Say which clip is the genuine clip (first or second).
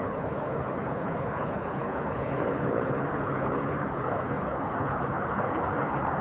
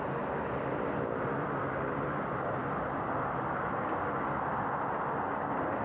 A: second